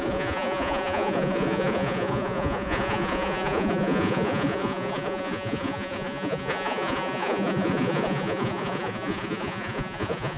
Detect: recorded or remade remade